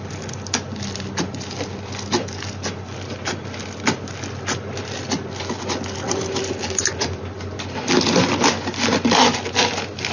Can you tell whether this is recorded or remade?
recorded